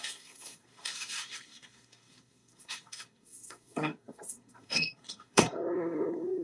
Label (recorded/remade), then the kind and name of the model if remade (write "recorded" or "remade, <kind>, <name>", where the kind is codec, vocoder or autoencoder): remade, codec, SNAC